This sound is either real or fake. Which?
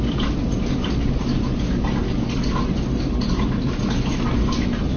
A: real